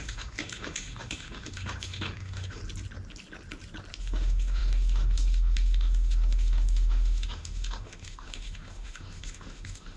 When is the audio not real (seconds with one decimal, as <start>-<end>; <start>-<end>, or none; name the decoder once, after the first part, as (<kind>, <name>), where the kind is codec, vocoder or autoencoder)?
0.0-2.6 (autoencoder, DAC-VAE); 4.0-10.0